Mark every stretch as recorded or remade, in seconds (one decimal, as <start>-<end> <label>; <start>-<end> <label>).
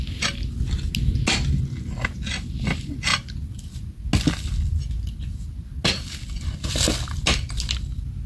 0.0-8.3 recorded